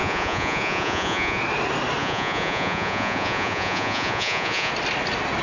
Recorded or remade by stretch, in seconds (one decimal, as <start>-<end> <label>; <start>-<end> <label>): 0.0-1.4 remade; 1.4-2.0 recorded; 2.0-4.7 remade; 4.7-5.4 recorded